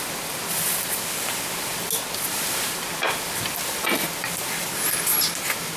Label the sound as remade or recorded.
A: recorded